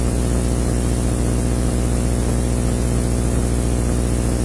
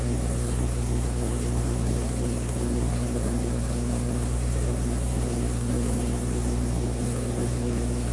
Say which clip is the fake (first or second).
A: second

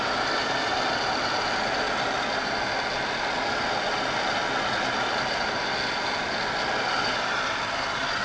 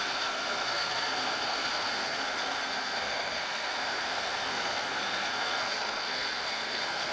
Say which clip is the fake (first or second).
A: second